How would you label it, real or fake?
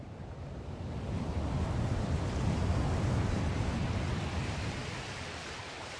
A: real